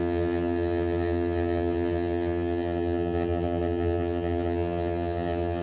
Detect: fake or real fake